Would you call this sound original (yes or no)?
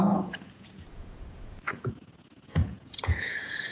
no